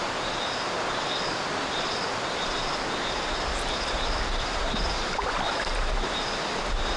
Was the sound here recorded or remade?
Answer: recorded